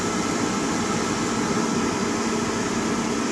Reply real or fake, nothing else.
real